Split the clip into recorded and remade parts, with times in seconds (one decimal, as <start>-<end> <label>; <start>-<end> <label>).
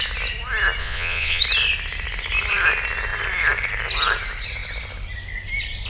0.0-0.8 recorded; 0.8-1.4 remade; 1.4-5.9 recorded